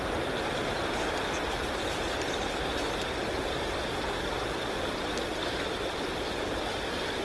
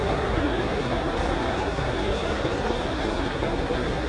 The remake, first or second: second